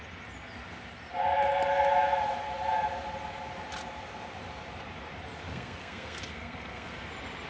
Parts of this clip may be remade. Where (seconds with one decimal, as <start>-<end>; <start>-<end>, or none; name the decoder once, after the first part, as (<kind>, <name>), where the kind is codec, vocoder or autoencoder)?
5.5-7.1 (codec, SNAC)